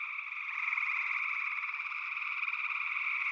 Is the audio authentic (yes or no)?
yes